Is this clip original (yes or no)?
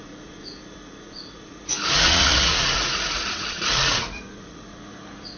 no